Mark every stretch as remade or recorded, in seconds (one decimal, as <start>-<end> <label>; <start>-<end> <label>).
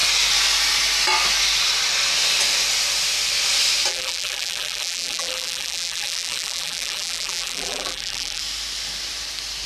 0.0-3.9 recorded; 3.9-8.4 remade; 8.4-9.7 recorded